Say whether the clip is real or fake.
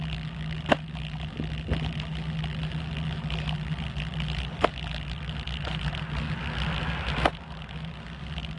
real